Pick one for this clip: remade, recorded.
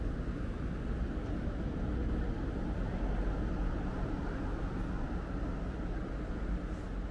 recorded